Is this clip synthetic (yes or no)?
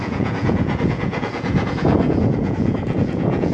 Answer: yes